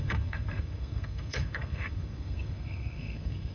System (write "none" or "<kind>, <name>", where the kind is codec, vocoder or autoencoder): codec, SNAC